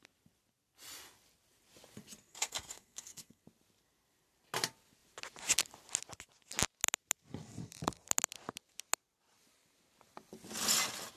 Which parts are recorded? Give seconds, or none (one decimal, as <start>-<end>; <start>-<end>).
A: 0.0-2.3; 3.4-11.2